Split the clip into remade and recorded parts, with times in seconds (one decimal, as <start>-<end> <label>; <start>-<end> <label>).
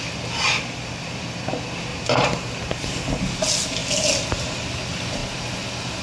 0.0-1.9 recorded; 1.9-3.0 remade; 3.0-6.0 recorded